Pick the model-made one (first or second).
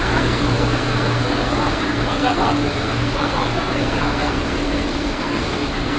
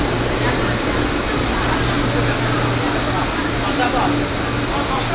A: first